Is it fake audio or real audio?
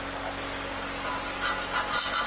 real